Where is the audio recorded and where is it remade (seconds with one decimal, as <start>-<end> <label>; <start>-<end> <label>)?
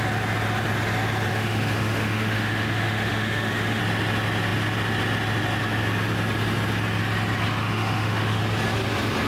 0.0-1.3 recorded; 1.3-3.8 remade; 3.8-7.6 recorded; 7.6-8.4 remade; 8.4-9.3 recorded